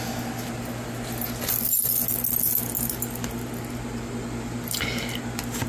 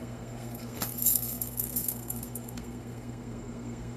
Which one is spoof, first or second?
second